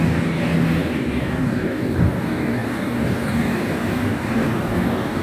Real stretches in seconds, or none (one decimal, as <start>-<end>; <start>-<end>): none